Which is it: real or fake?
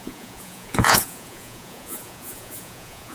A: fake